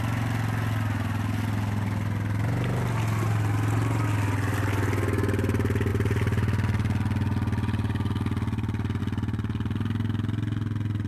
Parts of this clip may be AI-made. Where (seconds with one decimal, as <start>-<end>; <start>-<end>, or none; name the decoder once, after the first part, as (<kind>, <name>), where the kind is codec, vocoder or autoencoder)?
none

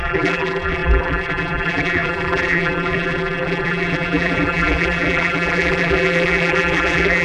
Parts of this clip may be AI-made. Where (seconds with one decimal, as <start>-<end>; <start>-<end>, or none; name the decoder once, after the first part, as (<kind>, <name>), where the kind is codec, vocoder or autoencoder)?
0.0-7.2 (vocoder, BigVGAN v2)